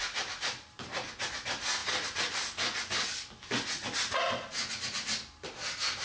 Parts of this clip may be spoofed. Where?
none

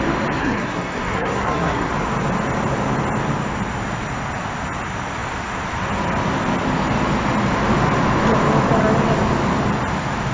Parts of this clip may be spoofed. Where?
0.4-1.9 (codec, SNAC)

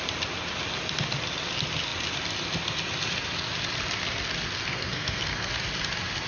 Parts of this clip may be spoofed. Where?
4.7-5.5 (codec, SNAC)

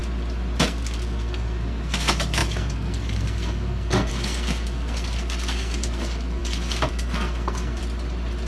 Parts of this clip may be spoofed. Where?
0.6-7.8 (codec, SNAC)